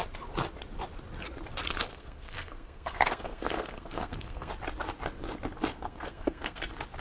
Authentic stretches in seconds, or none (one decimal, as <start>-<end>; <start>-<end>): 0.0-1.9; 4.5-5.7; 6.6-7.0